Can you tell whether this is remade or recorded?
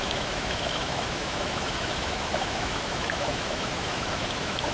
remade